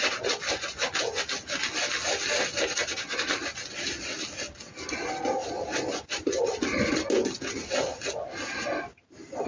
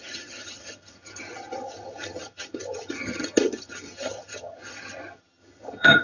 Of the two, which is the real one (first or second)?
first